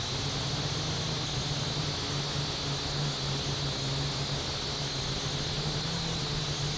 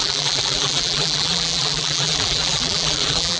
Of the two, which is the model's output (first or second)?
second